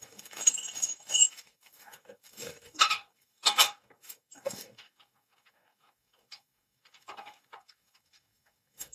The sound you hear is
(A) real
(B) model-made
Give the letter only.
B